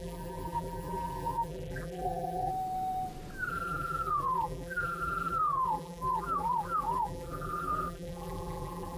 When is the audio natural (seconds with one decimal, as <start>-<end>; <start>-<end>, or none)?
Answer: 2.5-3.5